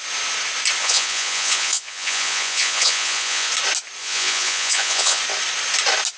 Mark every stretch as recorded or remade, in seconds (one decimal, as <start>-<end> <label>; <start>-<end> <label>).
0.0-0.8 recorded; 0.8-3.5 remade; 3.5-4.0 recorded; 4.0-5.2 remade; 5.2-6.2 recorded